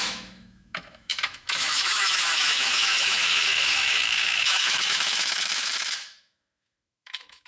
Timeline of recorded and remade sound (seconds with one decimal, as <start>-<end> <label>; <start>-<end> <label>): 0.0-7.5 remade